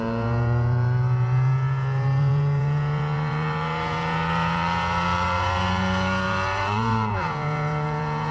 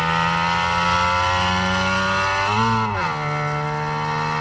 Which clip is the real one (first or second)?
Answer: second